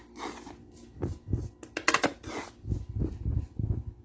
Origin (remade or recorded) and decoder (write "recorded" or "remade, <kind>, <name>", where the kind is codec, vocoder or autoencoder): recorded